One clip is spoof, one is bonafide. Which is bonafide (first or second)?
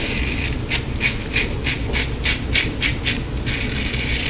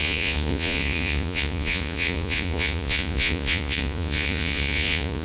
first